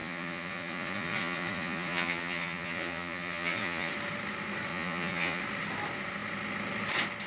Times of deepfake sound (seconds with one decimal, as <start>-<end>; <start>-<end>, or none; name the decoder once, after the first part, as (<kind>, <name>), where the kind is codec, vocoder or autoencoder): 0.0-3.9 (vocoder, Vocos); 4.7-5.4